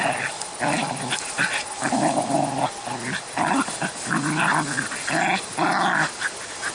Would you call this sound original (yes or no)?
yes